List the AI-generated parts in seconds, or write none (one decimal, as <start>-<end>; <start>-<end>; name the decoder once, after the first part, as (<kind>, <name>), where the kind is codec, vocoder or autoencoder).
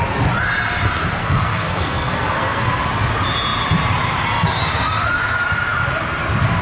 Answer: 1.2-2.8 (codec, SNAC)